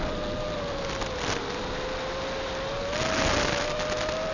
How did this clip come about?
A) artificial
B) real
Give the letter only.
B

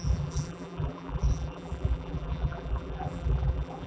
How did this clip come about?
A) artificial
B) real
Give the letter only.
A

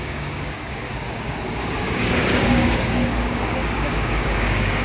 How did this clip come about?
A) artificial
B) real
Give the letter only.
A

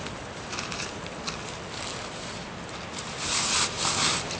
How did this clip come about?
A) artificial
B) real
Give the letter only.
B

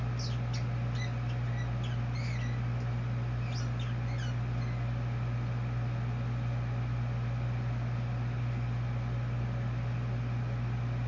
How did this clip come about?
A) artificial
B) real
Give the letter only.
B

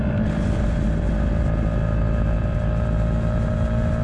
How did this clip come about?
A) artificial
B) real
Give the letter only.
B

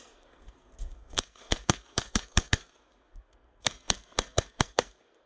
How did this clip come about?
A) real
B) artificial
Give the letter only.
B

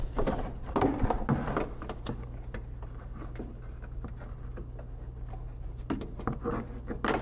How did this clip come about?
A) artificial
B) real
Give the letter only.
B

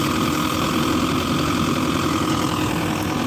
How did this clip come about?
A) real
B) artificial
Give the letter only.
A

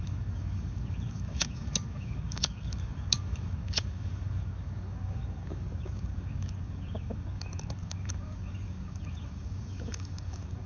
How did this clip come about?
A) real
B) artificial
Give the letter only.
B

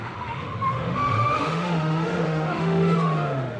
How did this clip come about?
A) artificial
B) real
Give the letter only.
A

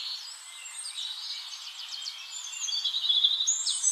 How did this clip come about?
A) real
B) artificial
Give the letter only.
B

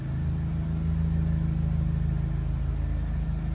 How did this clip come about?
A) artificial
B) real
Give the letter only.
B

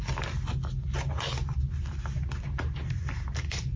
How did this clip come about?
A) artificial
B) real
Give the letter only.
B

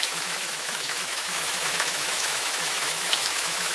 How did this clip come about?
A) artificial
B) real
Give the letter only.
A